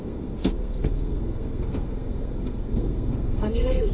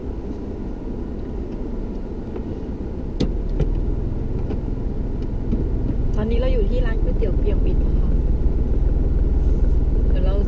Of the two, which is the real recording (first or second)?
second